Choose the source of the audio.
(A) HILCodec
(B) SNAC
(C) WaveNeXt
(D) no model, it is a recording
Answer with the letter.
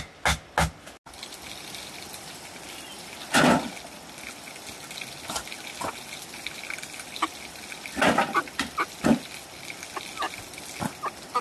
D